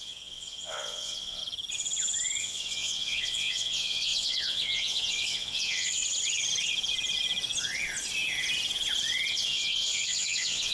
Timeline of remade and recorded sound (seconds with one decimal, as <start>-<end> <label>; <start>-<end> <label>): 0.0-1.4 remade; 1.4-2.4 recorded; 2.4-6.0 remade; 6.0-9.3 recorded; 9.3-10.7 remade